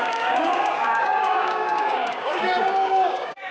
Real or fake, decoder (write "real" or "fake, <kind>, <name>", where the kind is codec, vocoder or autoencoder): fake, codec, DAC